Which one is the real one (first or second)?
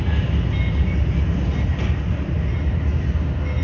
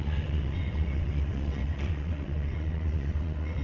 first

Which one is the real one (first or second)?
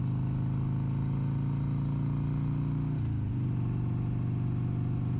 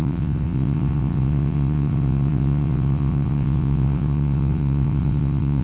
first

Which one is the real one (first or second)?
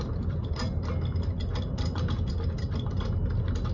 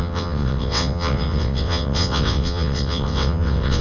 first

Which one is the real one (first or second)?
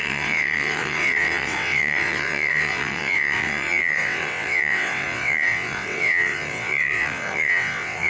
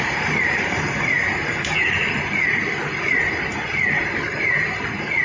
second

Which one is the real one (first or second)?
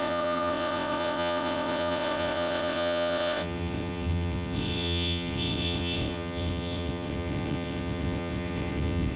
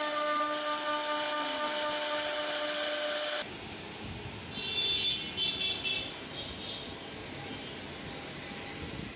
second